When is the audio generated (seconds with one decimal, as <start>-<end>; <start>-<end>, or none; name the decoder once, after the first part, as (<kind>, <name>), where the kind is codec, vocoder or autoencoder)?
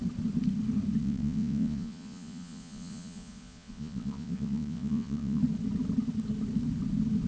1.0-5.4 (vocoder, Vocos)